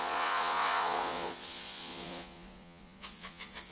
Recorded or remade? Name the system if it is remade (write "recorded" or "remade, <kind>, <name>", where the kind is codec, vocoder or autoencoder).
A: remade, vocoder, Vocos